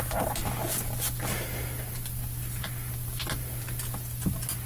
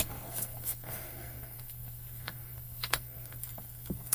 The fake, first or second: second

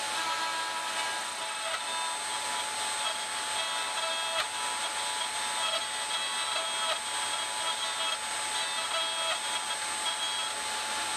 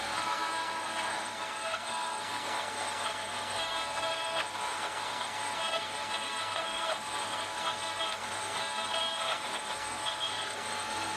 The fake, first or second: second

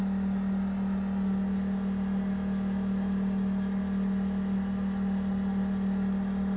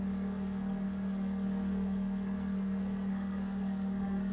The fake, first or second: second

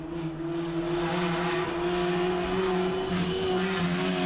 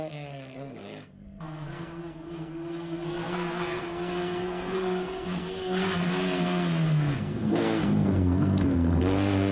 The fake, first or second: second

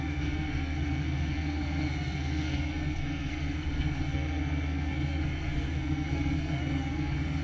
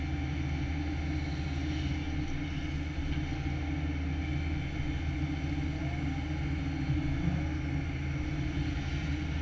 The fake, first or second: first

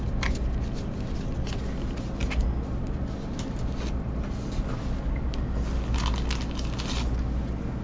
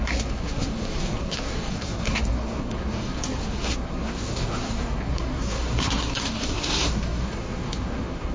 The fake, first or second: second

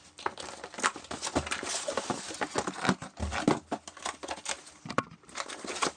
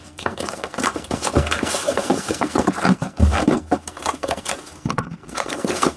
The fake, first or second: second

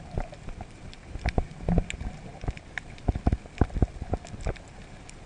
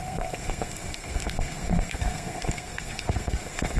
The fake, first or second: second